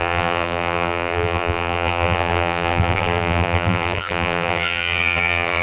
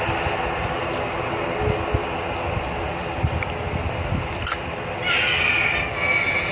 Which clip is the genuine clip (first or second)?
second